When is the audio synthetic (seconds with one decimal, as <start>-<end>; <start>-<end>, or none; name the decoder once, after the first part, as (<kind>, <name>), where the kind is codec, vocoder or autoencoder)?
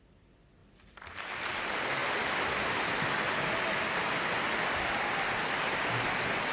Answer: none